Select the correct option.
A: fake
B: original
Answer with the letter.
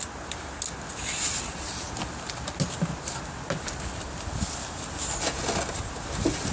B